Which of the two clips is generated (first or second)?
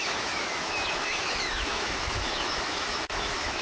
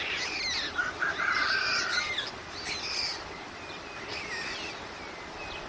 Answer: first